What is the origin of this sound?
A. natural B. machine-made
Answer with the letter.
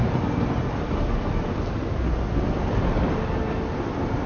A